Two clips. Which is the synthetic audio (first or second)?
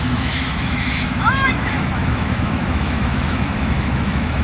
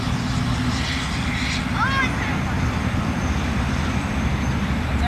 first